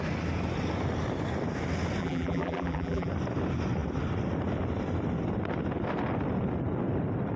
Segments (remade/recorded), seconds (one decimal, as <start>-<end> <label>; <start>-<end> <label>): 0.0-2.0 recorded; 2.0-3.1 remade; 3.1-7.4 recorded